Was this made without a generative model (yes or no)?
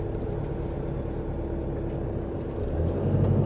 yes